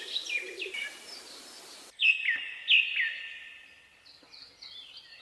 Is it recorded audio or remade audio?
recorded